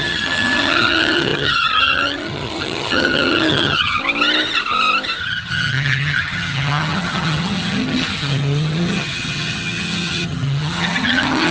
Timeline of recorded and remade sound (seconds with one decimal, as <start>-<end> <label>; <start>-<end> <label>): 0.0-4.0 remade; 4.0-5.2 recorded; 5.2-11.5 remade